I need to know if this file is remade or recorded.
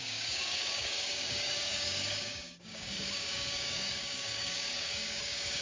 remade